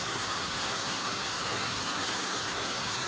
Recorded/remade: remade